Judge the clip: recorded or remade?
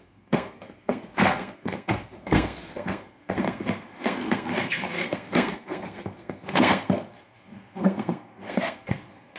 remade